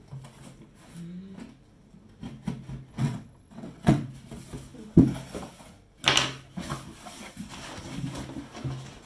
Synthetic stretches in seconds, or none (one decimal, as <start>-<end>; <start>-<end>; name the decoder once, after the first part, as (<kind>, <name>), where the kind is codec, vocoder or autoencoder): 2.9-4.1 (vocoder, WaveNeXt)